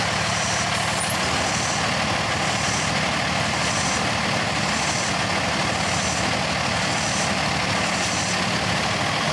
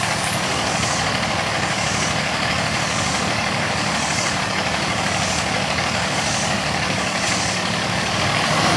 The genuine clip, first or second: first